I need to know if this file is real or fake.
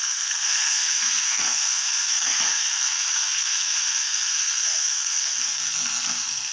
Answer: fake